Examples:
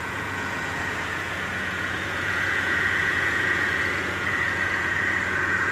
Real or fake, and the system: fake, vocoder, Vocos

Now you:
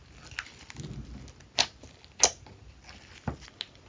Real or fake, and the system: real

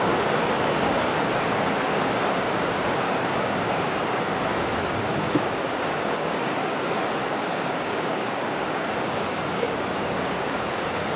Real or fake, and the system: fake, codec, DAC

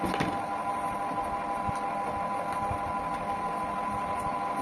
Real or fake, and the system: real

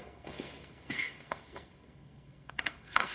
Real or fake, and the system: fake, codec, SNAC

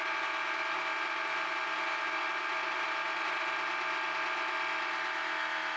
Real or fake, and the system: real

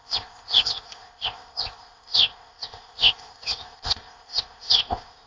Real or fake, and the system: fake, codec, ZipCodec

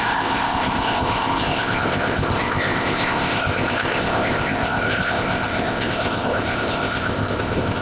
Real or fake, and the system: fake, codec, ZipCodec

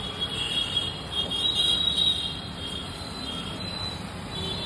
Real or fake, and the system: real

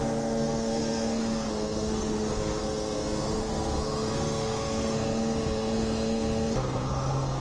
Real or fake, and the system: fake, codec, SNAC